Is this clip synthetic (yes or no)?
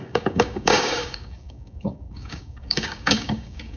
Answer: yes